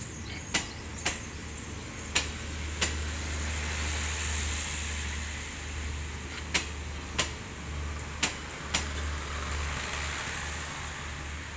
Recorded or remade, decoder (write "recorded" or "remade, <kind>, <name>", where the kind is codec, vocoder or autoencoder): recorded